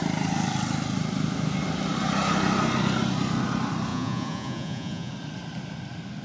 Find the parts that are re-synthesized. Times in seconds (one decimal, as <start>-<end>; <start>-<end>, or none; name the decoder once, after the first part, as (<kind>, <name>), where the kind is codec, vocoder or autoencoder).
3.9-5.1 (vocoder, Vocos)